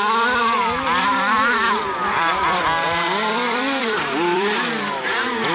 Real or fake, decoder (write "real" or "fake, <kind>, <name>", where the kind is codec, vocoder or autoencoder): fake, vocoder, BigVGAN v2